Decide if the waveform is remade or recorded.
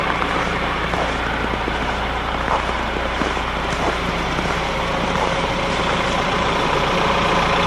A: remade